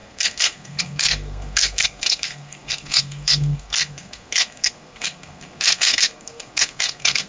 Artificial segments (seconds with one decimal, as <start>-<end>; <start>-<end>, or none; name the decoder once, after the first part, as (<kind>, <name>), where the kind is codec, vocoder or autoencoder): 0.0-7.3 (codec, SNAC)